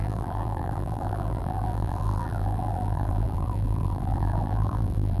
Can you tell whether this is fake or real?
fake